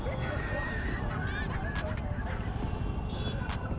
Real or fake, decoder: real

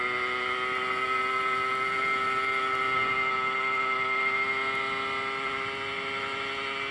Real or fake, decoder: real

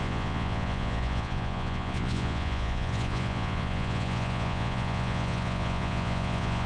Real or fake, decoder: fake, vocoder, Vocos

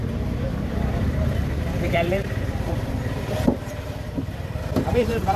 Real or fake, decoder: fake, vocoder, BigVGAN v2